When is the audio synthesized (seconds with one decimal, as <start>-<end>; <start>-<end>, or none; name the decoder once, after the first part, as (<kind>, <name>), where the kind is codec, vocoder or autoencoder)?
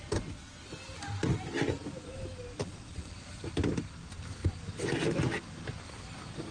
2.6-3.4 (vocoder, Vocos)